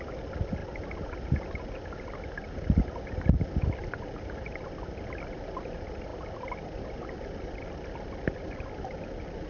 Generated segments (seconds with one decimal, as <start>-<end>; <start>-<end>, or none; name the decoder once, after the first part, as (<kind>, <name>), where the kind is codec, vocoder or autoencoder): none